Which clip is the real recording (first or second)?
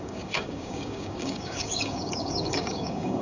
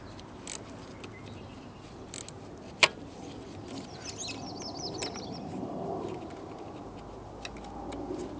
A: second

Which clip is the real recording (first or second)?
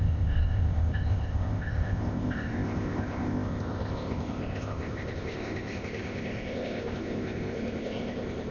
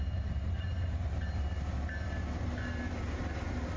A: second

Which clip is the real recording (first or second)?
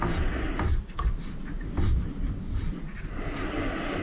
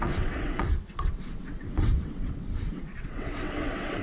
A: first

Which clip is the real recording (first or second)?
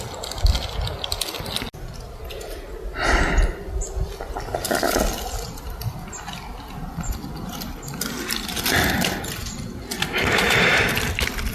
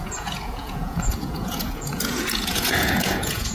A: first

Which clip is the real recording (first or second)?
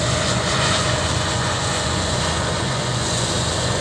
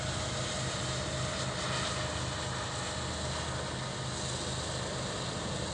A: second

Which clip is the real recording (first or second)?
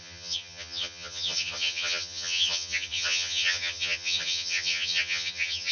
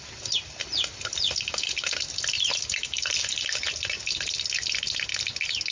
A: second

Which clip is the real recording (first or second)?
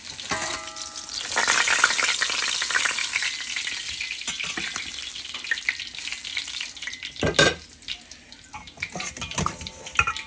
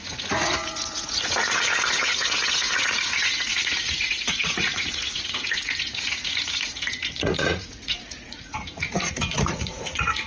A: first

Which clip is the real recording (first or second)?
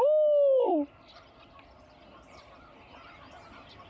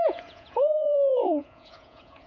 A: first